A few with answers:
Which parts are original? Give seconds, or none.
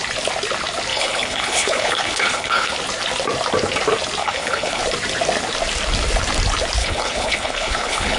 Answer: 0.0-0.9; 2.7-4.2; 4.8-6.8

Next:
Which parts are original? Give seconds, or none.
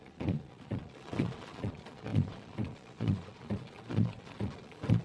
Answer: none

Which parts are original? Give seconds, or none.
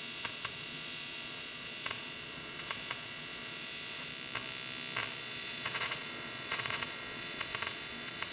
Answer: 4.1-5.2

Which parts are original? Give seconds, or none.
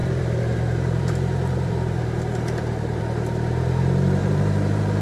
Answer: 3.0-4.2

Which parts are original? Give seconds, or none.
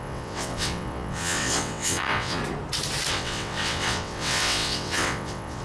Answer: 2.4-3.1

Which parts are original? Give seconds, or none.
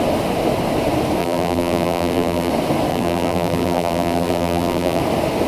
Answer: 0.0-1.2; 2.5-2.9; 5.0-5.5